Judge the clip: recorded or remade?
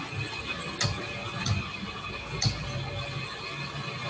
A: recorded